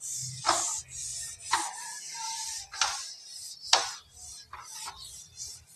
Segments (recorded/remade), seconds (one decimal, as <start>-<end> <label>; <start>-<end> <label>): 0.0-5.8 recorded